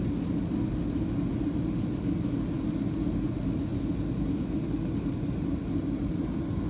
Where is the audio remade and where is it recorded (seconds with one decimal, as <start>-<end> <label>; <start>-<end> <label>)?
0.0-6.7 recorded